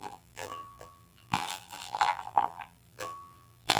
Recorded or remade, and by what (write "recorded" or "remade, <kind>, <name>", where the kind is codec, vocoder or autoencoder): remade, vocoder, BigVGAN v2